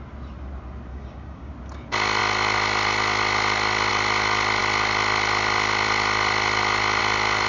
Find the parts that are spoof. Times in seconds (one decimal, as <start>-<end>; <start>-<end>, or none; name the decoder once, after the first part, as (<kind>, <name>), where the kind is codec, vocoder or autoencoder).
0.9-1.5 (codec, DAC)